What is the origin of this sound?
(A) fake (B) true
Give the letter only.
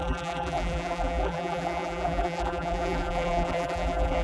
A